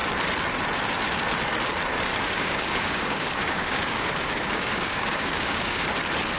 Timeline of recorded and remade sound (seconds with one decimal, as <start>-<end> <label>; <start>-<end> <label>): 0.0-2.1 recorded; 2.1-5.9 remade; 5.9-6.4 recorded